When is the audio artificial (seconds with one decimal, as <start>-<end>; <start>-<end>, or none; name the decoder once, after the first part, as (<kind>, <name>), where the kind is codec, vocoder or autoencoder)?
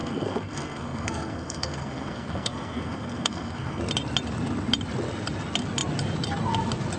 0.0-3.8 (codec, SNAC)